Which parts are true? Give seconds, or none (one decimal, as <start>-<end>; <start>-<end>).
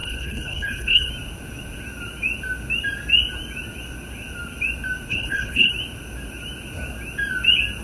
1.1-5.1; 5.7-7.8